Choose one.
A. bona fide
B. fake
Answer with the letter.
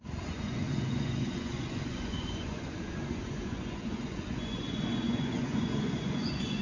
B